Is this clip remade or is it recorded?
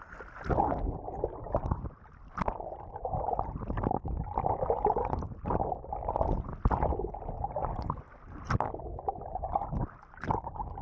recorded